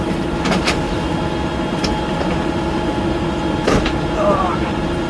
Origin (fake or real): real